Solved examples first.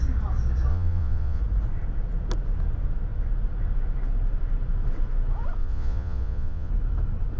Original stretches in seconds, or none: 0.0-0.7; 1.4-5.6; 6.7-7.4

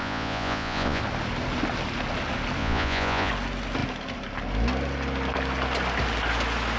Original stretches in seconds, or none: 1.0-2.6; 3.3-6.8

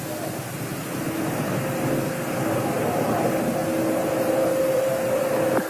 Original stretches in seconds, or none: 0.0-5.7